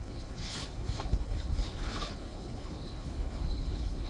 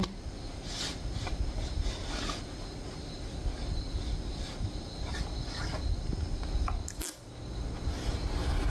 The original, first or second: second